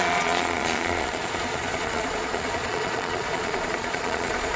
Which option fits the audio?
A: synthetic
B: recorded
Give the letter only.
A